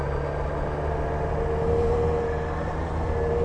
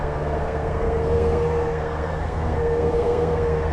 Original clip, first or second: first